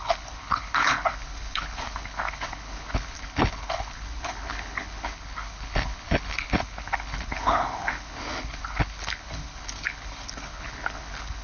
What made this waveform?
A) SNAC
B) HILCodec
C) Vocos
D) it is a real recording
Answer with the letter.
B